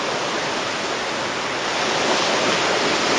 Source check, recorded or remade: recorded